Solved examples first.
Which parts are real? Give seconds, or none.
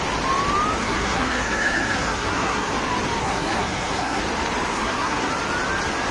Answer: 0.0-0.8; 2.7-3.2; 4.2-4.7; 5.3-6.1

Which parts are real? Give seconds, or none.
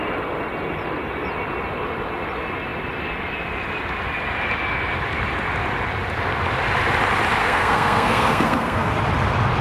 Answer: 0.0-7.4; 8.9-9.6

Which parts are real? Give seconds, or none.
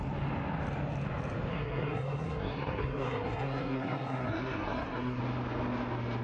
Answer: 0.0-1.5; 5.2-6.2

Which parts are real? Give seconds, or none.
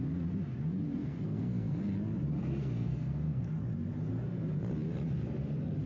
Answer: 0.0-1.0; 1.8-2.4; 3.5-5.9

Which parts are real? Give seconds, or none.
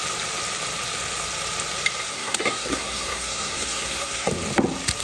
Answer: 0.0-2.1; 4.3-5.0